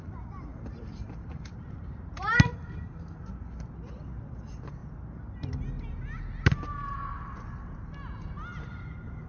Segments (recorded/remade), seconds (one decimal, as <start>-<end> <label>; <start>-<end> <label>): 0.0-0.5 recorded; 0.5-3.3 remade; 3.3-9.3 recorded